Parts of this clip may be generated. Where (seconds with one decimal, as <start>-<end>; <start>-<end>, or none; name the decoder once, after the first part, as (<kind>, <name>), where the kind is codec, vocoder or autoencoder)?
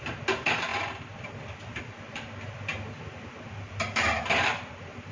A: none